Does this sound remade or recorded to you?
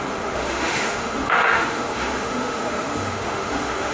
remade